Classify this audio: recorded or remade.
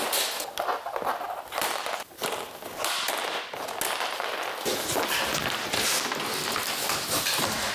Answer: recorded